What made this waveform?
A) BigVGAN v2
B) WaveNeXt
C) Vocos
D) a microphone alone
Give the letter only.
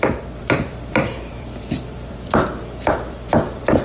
A